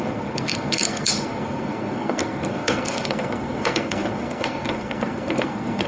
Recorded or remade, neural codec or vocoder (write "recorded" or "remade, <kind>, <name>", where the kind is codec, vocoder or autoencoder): remade, codec, SNAC